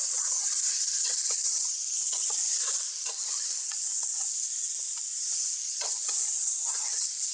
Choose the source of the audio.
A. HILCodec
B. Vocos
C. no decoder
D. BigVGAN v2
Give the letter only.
B